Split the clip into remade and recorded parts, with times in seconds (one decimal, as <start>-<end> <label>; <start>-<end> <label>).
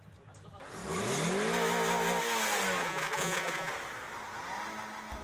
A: 0.0-2.8 recorded; 2.8-3.7 remade; 3.7-5.2 recorded